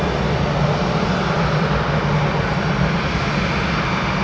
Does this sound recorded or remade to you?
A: recorded